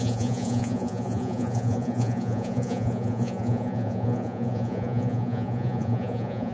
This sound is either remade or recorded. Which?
remade